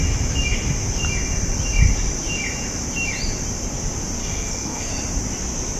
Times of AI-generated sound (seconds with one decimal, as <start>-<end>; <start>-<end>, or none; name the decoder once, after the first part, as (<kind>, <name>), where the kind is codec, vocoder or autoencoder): 4.2-4.9 (codec, SNAC)